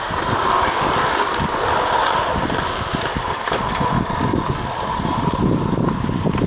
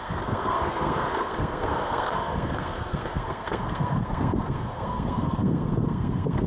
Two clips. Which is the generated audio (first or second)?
second